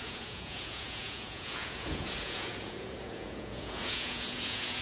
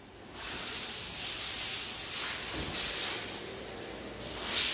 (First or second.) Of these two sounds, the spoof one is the first